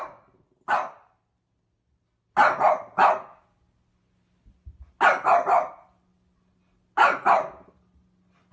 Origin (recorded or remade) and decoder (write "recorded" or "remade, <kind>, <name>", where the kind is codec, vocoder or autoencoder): recorded